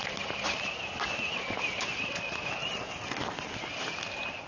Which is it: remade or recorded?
recorded